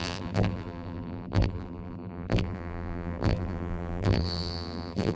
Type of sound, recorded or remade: remade